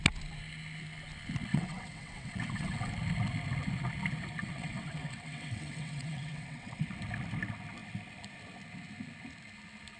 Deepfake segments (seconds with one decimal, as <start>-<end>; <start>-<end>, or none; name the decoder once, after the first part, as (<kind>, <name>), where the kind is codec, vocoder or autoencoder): 1.5-2.9 (vocoder, WaveNeXt); 4.4-7.0